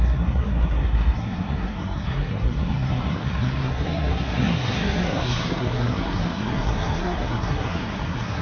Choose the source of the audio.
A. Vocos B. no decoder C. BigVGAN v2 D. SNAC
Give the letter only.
D